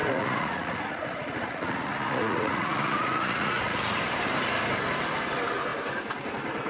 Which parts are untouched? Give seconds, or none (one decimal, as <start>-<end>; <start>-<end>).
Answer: 4.0-6.7